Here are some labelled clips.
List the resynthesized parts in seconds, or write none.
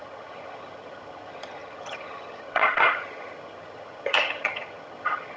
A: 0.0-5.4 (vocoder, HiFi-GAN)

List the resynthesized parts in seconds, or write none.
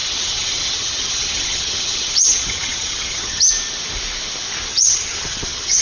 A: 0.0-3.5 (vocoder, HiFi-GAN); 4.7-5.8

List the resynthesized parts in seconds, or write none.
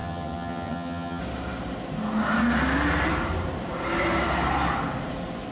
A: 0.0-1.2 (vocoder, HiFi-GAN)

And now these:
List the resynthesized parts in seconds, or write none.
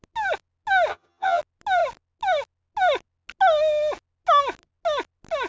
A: 0.9-1.4 (vocoder, HiFi-GAN)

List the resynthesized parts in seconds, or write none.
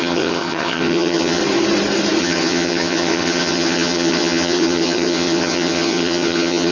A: 0.0-1.4 (vocoder, HiFi-GAN); 2.2-6.7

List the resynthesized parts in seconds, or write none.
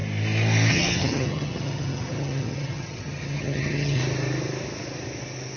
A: 0.7-4.0 (vocoder, HiFi-GAN)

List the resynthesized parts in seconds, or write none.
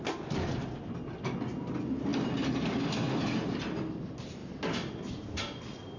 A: none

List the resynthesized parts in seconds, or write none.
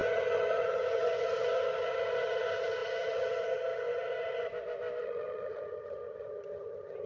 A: 0.0-4.5 (vocoder, HiFi-GAN); 5.0-7.1